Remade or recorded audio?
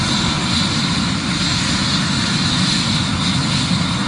recorded